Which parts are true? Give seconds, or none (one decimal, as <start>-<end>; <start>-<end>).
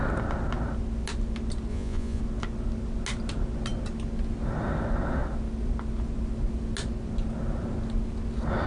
0.0-1.7; 2.2-8.7